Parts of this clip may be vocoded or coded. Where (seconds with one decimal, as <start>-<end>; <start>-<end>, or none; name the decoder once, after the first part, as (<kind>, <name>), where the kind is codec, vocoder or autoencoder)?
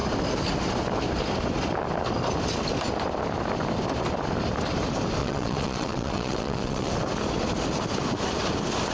5.2-6.9 (vocoder, WaveNeXt)